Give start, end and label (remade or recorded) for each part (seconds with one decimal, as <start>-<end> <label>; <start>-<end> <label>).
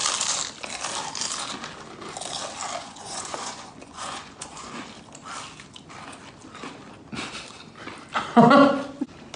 0.0-2.8 recorded; 2.8-4.8 remade; 4.8-9.4 recorded